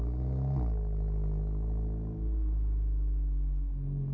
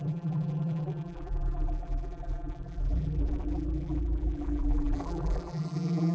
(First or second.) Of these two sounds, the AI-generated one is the second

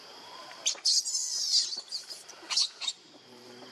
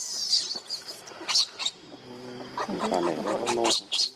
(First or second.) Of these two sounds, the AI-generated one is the first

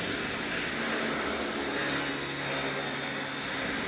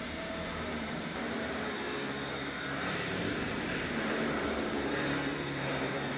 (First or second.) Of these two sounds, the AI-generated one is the second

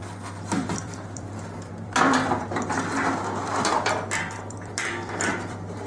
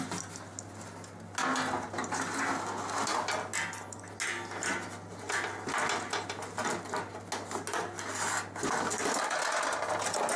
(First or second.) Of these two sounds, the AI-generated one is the first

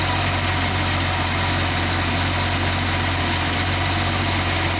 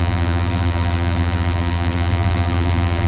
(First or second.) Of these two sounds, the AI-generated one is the second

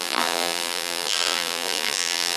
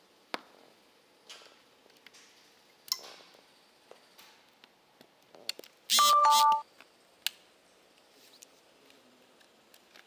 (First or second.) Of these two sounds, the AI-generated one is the first